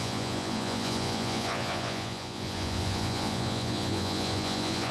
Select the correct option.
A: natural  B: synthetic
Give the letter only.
B